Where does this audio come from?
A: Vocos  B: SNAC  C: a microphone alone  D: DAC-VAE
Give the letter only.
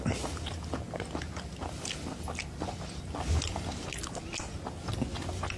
C